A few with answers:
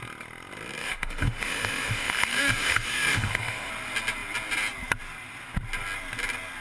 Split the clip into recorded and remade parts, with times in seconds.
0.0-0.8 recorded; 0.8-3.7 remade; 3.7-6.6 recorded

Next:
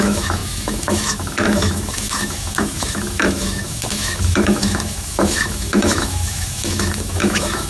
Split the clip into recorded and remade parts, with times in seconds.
0.0-7.7 remade